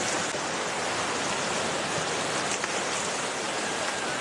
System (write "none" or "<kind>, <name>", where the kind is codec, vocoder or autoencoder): none